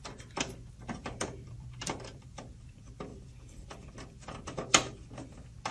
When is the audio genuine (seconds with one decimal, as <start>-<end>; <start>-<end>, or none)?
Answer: 0.0-1.0; 2.4-3.1; 3.9-5.7